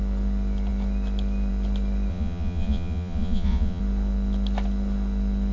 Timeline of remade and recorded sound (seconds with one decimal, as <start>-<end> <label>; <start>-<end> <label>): 0.0-2.1 recorded; 2.1-3.8 remade; 3.8-5.5 recorded